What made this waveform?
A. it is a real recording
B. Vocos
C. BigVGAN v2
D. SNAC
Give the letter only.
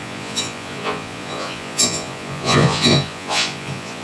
B